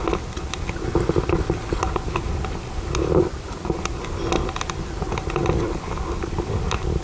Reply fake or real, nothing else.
real